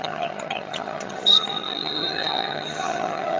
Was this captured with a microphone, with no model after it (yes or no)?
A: no